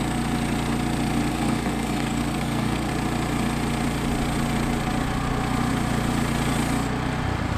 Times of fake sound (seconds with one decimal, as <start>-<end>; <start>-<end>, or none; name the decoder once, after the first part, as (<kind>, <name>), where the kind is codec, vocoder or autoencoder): 1.3-2.9 (codec, SNAC)